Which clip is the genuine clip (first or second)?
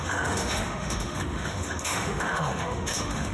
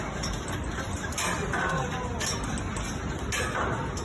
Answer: second